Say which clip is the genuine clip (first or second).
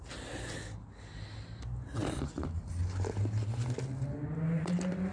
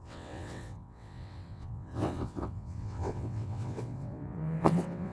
first